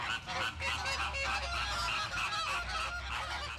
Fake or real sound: real